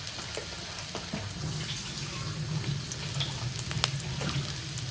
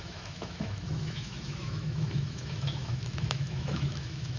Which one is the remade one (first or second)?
second